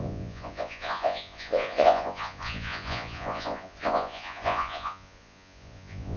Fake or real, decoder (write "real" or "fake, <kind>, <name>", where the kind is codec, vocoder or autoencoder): fake, vocoder, Vocos